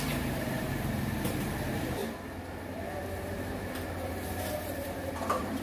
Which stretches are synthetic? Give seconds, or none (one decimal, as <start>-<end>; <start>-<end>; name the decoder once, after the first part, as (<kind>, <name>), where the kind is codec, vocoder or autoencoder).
0.0-2.0 (vocoder, BigVGAN v2); 4.5-5.6